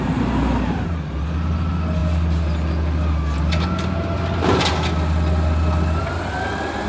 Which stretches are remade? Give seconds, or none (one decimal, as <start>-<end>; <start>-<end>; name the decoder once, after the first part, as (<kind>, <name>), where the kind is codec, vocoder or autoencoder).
none